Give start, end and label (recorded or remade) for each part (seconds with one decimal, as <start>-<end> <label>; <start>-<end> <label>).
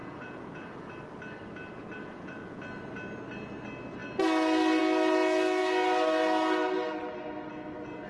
0.0-0.9 remade; 0.9-2.0 recorded; 2.0-2.6 remade; 2.6-8.1 recorded